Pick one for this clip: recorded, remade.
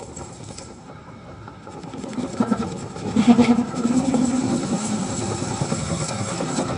remade